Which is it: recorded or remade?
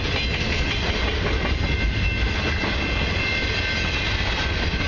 recorded